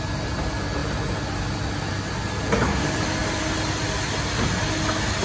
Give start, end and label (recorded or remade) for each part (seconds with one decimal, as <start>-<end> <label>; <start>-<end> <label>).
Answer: 0.0-5.2 recorded